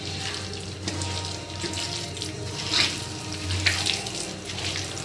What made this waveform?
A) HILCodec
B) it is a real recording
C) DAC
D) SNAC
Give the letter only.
B